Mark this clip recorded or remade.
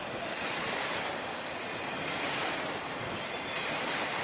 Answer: recorded